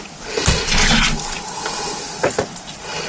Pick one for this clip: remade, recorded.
recorded